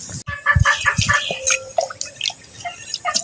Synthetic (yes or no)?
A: no